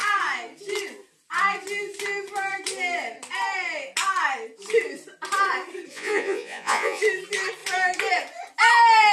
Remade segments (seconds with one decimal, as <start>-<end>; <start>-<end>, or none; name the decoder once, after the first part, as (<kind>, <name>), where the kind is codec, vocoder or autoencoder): 5.9-7.0 (vocoder, Vocos)